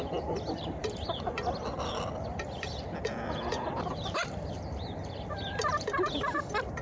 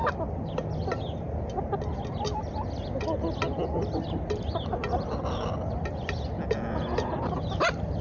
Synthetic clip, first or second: first